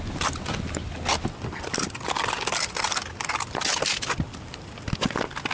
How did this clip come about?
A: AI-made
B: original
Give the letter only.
B